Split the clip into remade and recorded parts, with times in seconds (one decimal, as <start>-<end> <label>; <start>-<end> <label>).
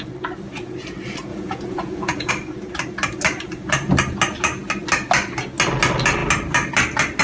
0.0-1.3 recorded; 1.3-2.3 remade; 2.3-7.2 recorded